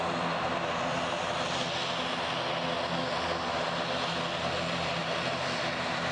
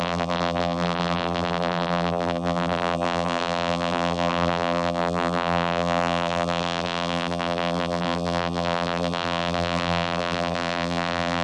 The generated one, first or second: second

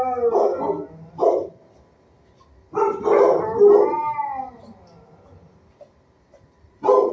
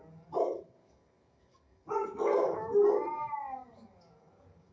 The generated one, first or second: second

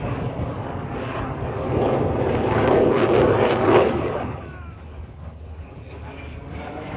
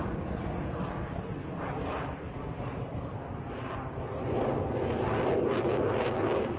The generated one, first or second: first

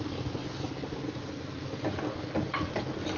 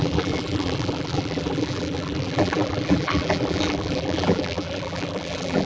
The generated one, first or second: second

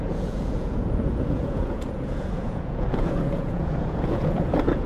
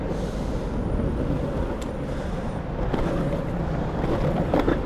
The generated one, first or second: first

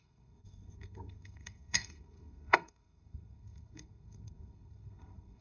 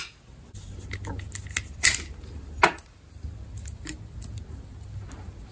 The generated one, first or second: first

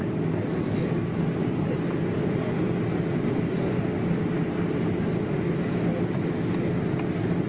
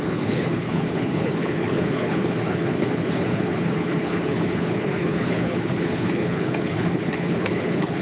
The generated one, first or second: second